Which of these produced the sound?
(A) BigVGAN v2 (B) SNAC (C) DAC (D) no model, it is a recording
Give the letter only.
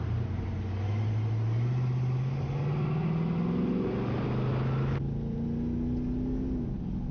D